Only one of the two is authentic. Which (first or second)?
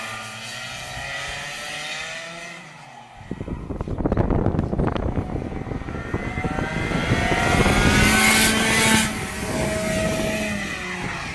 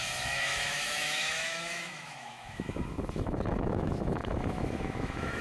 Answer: first